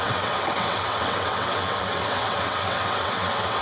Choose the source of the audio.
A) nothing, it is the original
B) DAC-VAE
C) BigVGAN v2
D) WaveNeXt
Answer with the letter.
D